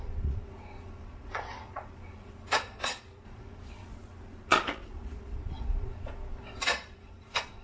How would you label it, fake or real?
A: fake